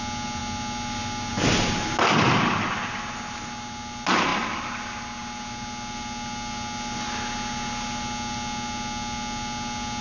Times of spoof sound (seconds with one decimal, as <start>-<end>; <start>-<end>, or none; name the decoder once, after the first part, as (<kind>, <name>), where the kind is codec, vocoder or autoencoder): none